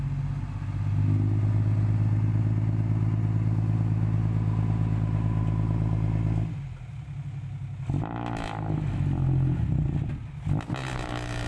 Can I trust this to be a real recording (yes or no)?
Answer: yes